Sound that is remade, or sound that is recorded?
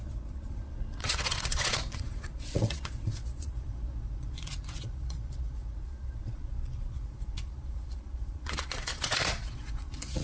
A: remade